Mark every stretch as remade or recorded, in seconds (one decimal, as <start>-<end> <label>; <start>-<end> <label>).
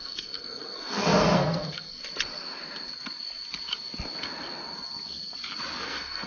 0.0-2.0 remade; 2.0-5.8 recorded; 5.8-6.3 remade